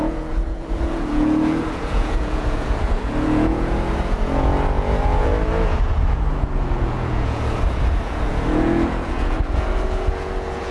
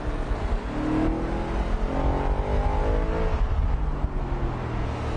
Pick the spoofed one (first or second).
first